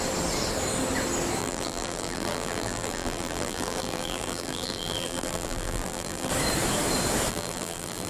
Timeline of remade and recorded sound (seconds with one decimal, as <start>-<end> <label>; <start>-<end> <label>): 0.0-1.4 recorded; 1.4-6.3 remade; 6.3-7.3 recorded; 7.3-8.1 remade

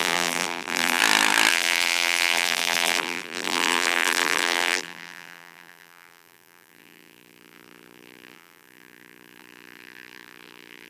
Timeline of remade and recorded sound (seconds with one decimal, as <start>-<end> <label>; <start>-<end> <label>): 0.0-1.0 remade; 1.0-1.5 recorded; 1.5-10.9 remade

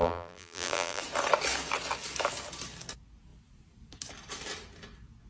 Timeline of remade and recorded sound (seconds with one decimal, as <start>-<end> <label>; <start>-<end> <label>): 0.0-1.0 remade; 1.0-5.3 recorded

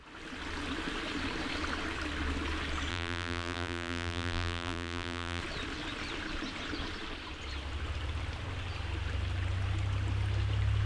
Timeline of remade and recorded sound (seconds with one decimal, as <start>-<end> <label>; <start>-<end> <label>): 0.0-2.9 recorded; 2.9-5.4 remade; 5.4-10.9 recorded

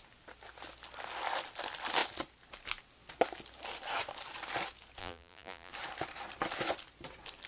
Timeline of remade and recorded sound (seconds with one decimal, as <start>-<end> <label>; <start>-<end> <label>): 0.0-5.0 recorded; 5.0-5.7 remade; 5.7-7.5 recorded

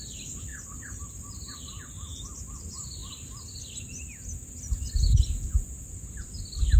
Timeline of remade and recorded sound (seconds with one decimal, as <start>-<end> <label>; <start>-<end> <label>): 0.0-0.5 recorded; 0.5-2.4 remade; 2.4-6.8 recorded

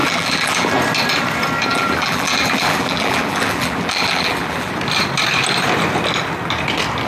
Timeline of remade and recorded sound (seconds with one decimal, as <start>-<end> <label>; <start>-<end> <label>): 0.0-0.7 remade; 0.7-1.7 recorded; 1.7-4.7 remade; 4.7-7.1 recorded

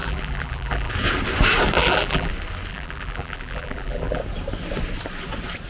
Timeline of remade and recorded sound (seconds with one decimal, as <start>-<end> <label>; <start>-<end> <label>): 0.0-0.9 remade; 0.9-1.8 recorded; 1.8-2.3 remade; 2.3-2.7 recorded; 2.7-4.2 remade; 4.2-5.7 recorded